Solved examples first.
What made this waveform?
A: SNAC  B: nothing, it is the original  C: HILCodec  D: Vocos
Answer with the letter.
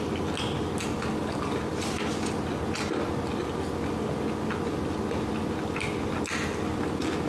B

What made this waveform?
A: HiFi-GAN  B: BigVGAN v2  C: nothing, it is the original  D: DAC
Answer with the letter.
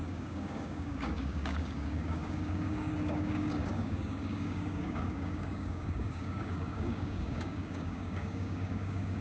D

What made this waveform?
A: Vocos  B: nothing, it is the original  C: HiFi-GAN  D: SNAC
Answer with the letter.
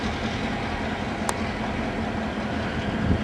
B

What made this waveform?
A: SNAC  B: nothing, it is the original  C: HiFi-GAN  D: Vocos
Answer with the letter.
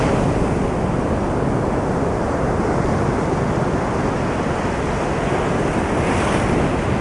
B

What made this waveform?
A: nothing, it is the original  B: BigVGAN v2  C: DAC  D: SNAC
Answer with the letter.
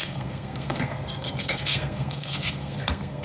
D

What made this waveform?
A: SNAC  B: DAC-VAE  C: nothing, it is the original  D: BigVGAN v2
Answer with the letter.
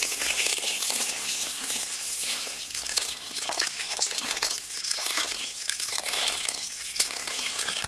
A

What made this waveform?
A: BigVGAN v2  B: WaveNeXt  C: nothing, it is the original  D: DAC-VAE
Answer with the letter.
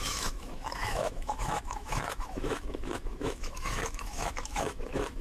D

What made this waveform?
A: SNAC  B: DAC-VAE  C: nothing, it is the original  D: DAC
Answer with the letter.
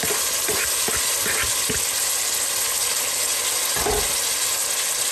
C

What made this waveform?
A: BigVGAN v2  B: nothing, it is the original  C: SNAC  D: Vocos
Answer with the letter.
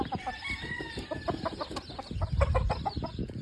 B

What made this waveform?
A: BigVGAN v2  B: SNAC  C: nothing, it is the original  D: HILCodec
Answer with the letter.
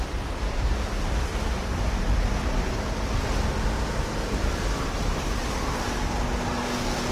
C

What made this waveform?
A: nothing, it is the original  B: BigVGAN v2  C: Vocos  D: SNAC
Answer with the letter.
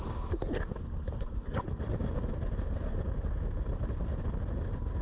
A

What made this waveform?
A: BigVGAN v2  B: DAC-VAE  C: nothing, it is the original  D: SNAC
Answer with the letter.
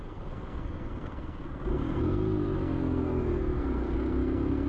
D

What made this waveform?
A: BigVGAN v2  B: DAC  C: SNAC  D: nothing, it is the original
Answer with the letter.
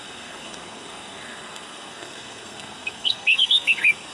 C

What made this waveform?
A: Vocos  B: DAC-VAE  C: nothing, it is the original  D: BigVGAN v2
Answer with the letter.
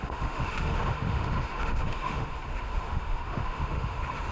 B